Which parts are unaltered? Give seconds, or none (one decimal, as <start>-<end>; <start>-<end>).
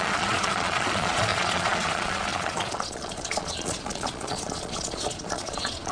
none